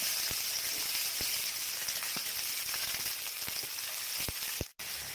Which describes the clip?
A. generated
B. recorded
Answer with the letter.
B